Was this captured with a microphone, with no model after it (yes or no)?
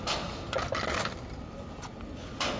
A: yes